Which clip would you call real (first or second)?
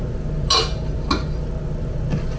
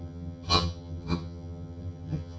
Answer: first